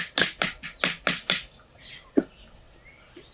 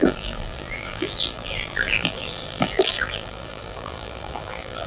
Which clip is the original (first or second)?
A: first